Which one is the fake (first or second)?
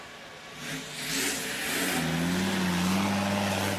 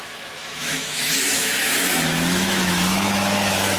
second